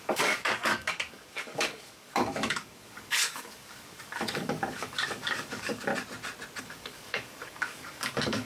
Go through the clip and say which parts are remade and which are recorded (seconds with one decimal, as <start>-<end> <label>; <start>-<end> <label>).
0.0-5.9 remade; 5.9-6.6 recorded; 6.6-8.5 remade